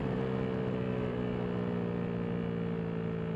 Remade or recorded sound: recorded